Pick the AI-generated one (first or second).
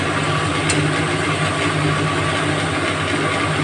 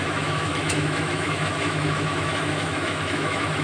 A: second